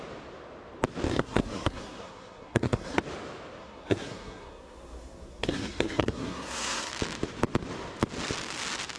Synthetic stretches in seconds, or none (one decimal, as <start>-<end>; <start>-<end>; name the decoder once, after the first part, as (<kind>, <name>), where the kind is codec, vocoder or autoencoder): 1.1-3.0 (codec, SNAC); 3.6-6.9